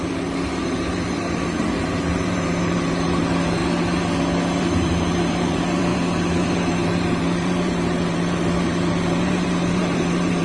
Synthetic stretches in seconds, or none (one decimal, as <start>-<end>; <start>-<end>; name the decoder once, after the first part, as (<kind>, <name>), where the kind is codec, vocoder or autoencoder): 0.0-3.6 (vocoder, BigVGAN v2); 4.6-10.4

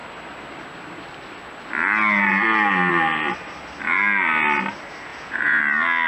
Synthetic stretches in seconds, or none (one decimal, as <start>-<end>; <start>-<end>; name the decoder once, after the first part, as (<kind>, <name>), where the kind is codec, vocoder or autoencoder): 5.1-5.6 (vocoder, Vocos)

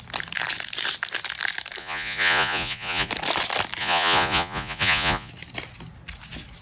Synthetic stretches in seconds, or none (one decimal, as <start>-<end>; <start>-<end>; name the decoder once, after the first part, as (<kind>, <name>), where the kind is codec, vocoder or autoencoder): 1.8-3.1 (vocoder, Vocos); 3.8-5.3

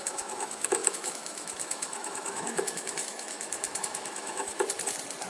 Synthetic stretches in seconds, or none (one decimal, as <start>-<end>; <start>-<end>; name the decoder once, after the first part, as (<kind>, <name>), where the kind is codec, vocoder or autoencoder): 0.0-4.5 (autoencoder, DAC-VAE)

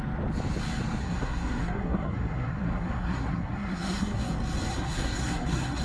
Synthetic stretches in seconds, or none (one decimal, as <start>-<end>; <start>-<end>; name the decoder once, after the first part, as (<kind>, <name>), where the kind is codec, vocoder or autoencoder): 1.0-4.3 (codec, SNAC); 4.7-5.8